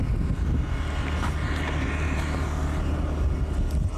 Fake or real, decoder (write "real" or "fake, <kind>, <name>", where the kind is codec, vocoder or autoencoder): real